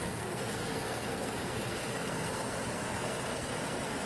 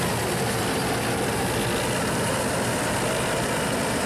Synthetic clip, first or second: first